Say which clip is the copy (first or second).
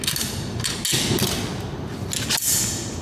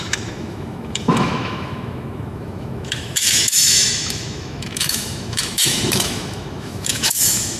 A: second